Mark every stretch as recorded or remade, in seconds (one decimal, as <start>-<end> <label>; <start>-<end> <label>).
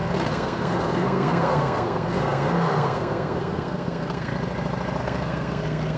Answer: 0.0-4.3 remade; 4.3-5.0 recorded; 5.0-6.0 remade